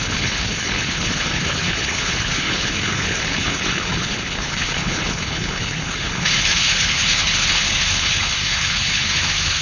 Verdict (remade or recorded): remade